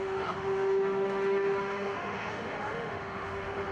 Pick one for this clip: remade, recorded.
remade